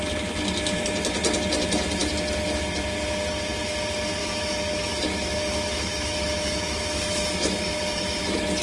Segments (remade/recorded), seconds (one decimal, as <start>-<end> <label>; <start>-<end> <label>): 0.0-4.2 recorded; 4.2-8.2 remade; 8.2-8.6 recorded